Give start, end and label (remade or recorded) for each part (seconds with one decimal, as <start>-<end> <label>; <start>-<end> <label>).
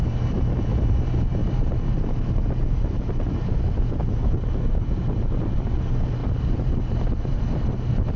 0.0-8.2 recorded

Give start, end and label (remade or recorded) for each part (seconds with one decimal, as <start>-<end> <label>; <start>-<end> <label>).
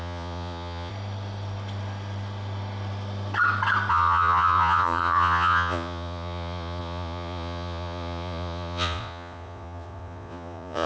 0.0-0.9 remade; 0.9-3.9 recorded; 3.9-10.9 remade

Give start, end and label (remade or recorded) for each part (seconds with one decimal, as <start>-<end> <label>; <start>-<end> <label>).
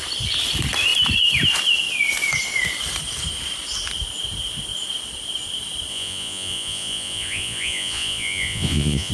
0.0-5.9 recorded; 5.9-9.1 remade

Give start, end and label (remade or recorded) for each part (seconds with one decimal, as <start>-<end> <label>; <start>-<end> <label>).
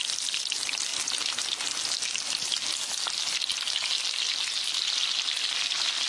0.0-6.1 recorded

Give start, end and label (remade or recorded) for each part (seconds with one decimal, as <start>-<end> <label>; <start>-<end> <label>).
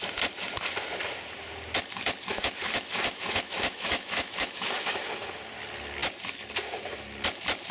0.0-2.3 recorded; 2.3-5.1 remade; 5.1-7.7 recorded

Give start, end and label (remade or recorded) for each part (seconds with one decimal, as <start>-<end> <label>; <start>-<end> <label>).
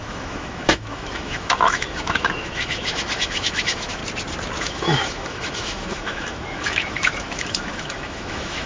0.0-4.0 remade; 4.0-4.6 recorded; 4.6-8.7 remade